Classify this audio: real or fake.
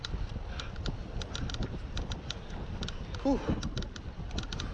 real